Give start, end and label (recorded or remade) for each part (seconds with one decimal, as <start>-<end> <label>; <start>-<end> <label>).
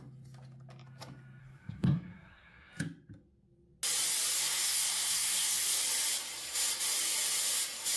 0.0-1.4 recorded; 1.4-2.7 remade; 2.7-4.3 recorded; 4.3-5.8 remade; 5.8-8.0 recorded